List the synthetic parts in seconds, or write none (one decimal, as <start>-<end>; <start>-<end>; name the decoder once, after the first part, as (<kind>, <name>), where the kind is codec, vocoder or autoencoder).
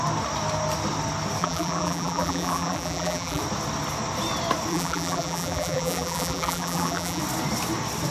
1.4-3.4 (vocoder, BigVGAN v2); 4.7-7.2